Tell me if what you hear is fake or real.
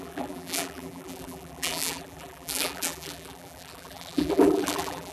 fake